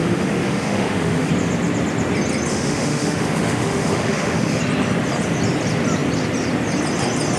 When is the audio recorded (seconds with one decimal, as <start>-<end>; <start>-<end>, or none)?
1.3-2.5; 4.6-7.4